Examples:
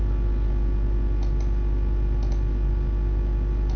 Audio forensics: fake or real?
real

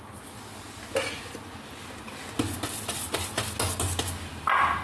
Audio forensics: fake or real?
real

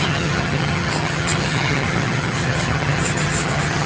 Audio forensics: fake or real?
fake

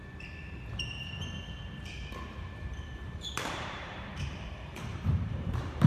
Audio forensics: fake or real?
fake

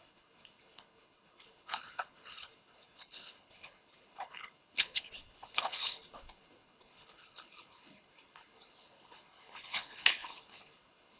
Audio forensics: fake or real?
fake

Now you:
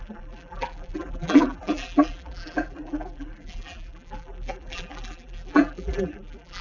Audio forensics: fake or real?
fake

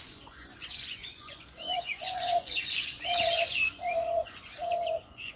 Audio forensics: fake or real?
fake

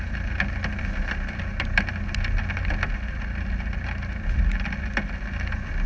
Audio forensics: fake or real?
real